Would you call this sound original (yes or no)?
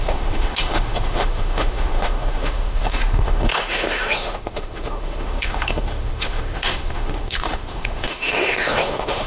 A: no